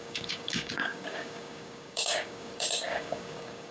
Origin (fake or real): fake